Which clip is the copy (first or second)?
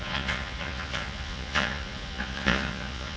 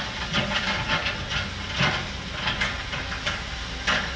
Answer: first